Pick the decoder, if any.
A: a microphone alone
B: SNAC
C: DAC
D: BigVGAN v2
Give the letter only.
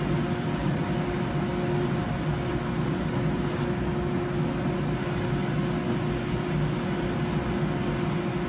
A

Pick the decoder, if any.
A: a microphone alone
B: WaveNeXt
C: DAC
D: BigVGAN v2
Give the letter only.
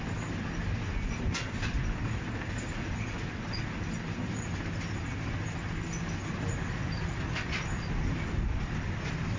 A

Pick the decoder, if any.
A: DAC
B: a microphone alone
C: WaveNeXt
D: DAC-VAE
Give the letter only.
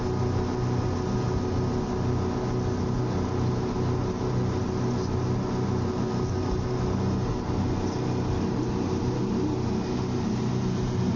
B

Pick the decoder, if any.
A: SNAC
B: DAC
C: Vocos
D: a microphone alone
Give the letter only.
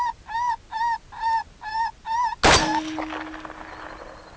D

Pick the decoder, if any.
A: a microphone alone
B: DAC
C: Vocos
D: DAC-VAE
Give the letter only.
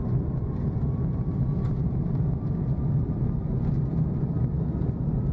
A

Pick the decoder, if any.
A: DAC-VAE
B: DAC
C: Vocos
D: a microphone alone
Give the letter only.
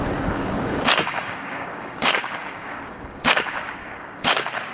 B